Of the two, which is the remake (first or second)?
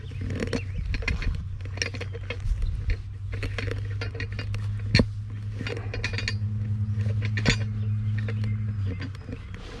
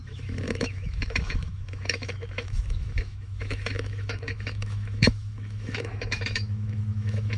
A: second